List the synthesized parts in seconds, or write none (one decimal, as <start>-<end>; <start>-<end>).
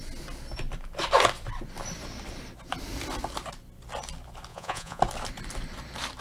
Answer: 4.5-5.0